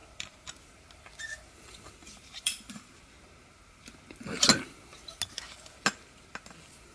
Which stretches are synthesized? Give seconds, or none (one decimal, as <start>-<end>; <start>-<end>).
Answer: 0.0-0.8; 2.0-3.0